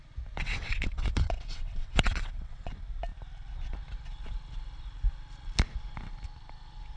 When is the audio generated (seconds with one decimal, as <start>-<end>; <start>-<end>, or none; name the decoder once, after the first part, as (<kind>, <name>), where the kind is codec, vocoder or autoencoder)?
0.4-2.7 (vocoder, WaveNeXt)